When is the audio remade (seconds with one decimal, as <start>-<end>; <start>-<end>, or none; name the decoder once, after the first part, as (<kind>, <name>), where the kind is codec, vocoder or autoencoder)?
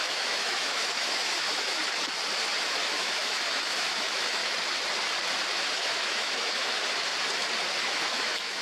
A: 0.0-1.8 (autoencoder, DAC-VAE); 2.6-4.4; 5.5-7.1; 7.8-8.6